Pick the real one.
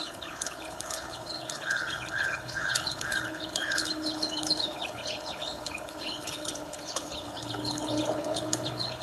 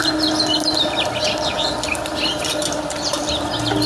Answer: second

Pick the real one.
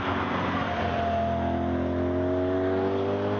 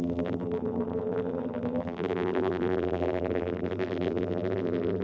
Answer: first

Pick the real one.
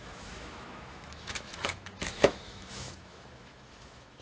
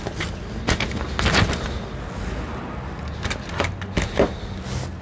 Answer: second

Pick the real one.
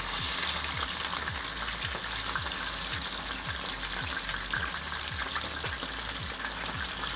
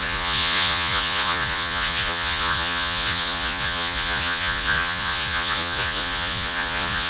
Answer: first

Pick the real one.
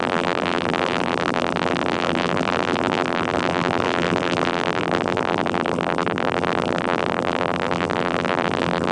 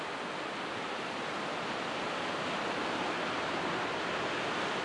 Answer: second